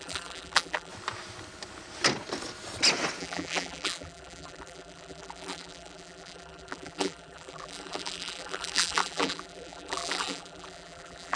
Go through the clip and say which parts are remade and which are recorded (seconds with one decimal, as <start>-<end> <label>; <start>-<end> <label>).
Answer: 0.0-0.9 remade; 0.9-3.2 recorded; 3.2-11.4 remade